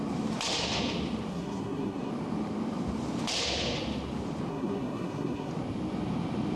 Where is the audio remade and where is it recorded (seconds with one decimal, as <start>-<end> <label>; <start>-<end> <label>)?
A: 0.0-1.3 recorded; 1.3-2.1 remade; 2.1-4.5 recorded; 4.5-5.5 remade; 5.5-6.6 recorded